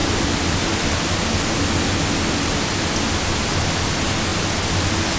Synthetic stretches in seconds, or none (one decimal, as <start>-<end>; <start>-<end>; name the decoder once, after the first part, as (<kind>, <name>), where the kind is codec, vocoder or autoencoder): none